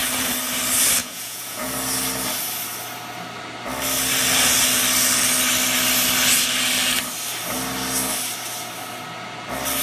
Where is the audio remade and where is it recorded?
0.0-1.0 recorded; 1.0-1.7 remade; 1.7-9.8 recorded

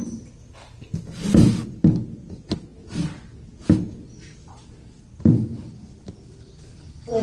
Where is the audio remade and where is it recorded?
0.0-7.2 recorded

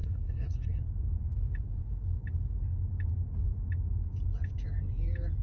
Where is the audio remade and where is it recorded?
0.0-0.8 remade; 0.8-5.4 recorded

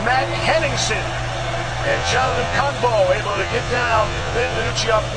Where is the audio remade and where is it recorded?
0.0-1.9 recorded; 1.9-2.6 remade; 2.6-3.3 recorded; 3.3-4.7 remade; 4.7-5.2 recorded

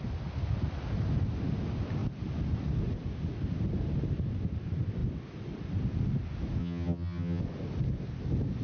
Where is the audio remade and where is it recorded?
0.0-6.6 recorded; 6.6-7.4 remade; 7.4-8.6 recorded

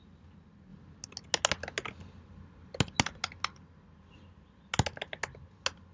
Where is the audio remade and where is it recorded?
0.0-5.9 recorded

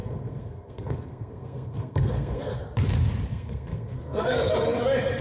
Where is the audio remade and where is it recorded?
0.0-2.6 remade; 2.6-3.3 recorded; 3.3-4.8 remade; 4.8-5.2 recorded

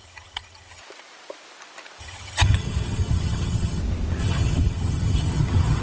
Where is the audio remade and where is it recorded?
0.0-0.8 remade; 0.8-2.0 recorded; 2.0-3.8 remade; 3.8-4.2 recorded; 4.2-5.8 remade